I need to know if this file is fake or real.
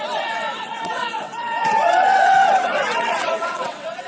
fake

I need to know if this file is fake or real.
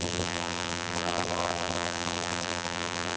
fake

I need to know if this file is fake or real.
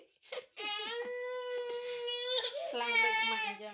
real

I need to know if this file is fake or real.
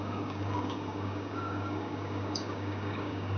fake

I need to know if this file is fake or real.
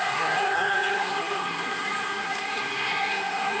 fake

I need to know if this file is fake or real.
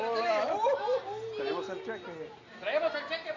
real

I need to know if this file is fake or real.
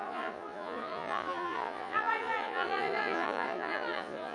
fake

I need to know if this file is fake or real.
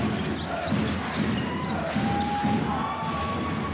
real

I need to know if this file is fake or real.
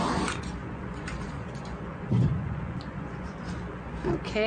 fake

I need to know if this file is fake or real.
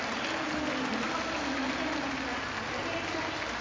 real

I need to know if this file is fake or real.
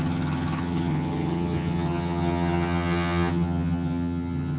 fake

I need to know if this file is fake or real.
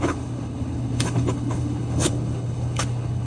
fake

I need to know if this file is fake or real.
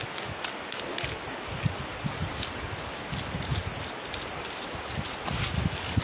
real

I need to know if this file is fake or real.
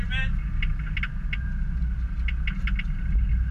real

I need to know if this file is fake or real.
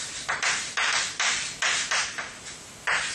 real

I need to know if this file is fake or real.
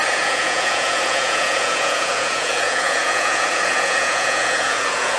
fake